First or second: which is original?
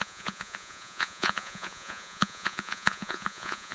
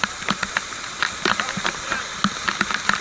second